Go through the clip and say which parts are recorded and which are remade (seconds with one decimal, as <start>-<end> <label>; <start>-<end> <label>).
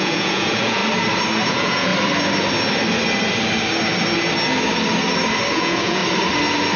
0.0-0.8 remade; 0.8-1.5 recorded; 1.5-1.9 remade; 1.9-5.5 recorded; 5.5-6.0 remade; 6.0-6.8 recorded